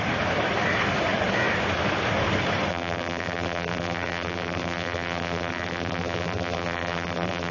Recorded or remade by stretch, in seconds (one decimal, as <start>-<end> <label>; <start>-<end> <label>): 0.0-2.7 recorded; 2.7-7.5 remade